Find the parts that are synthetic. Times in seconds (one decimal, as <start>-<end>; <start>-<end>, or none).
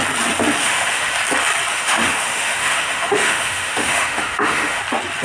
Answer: 0.6-1.2; 1.7-4.8